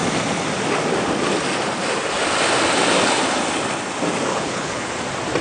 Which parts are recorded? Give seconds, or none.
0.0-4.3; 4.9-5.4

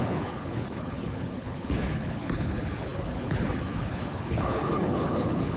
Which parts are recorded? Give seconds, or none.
none

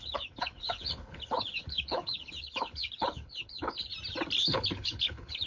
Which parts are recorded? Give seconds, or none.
3.9-4.4

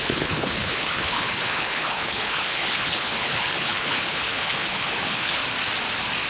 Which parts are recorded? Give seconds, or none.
5.4-6.3

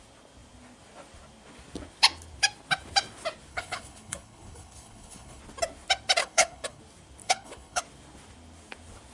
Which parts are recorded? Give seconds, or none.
0.0-3.5; 5.4-6.2; 6.8-7.2; 7.8-9.1